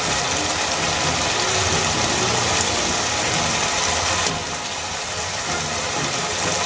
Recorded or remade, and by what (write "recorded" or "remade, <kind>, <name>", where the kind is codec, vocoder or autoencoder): recorded